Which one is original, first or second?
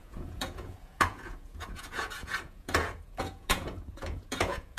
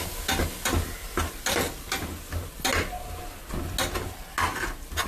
second